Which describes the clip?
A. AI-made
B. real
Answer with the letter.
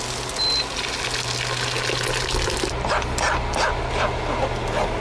B